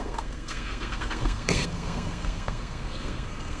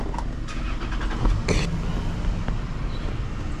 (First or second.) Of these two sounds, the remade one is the first